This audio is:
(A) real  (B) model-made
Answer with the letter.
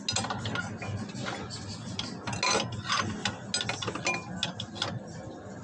A